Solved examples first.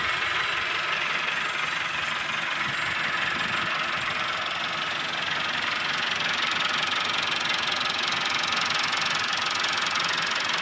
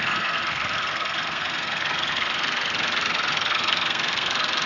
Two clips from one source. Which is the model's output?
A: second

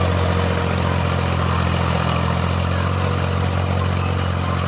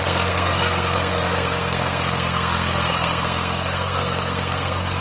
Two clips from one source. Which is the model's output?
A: second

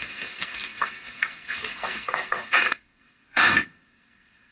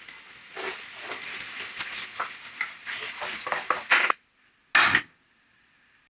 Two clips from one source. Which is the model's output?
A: first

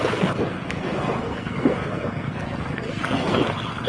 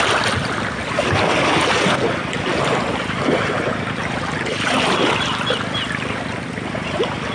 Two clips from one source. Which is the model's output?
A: first